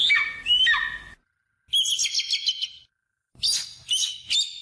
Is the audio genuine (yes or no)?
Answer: yes